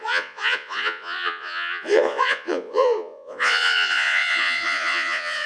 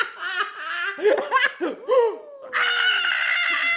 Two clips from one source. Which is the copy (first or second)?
first